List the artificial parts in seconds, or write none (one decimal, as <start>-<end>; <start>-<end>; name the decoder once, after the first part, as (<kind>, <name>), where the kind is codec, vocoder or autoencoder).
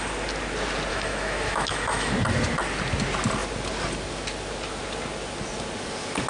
0.9-2.1 (autoencoder, DAC-VAE)